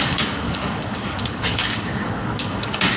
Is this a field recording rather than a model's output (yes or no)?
no